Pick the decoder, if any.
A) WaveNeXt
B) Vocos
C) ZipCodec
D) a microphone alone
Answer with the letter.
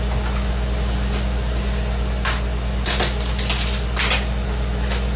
D